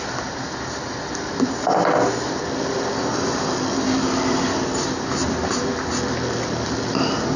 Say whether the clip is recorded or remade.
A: recorded